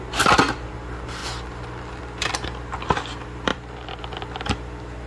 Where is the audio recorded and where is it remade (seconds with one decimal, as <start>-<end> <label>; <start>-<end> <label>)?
0.0-3.5 recorded; 3.5-4.0 remade; 4.0-5.1 recorded